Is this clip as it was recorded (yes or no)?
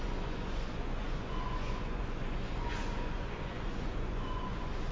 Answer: no